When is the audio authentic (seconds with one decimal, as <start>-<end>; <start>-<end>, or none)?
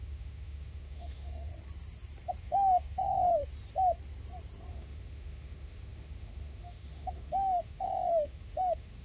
1.5-2.4; 3.5-4.7